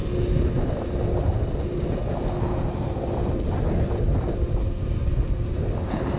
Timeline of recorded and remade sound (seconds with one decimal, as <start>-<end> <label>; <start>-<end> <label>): 0.0-6.2 recorded